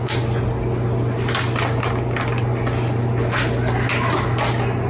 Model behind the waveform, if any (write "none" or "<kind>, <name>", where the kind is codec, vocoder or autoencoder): none